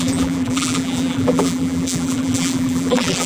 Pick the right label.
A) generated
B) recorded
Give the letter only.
A